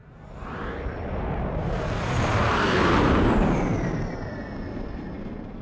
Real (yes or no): no